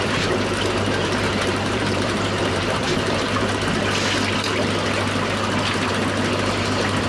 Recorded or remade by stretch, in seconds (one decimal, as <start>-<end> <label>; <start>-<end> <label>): 0.0-1.0 recorded; 1.0-3.5 remade; 3.5-7.1 recorded